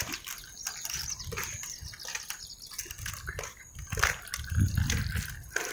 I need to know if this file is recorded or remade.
recorded